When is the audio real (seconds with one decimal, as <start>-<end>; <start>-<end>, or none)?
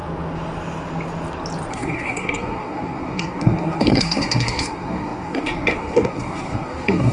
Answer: 0.0-1.7